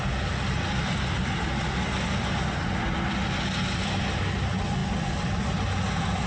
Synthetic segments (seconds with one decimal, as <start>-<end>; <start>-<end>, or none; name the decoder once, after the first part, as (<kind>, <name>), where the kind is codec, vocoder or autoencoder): none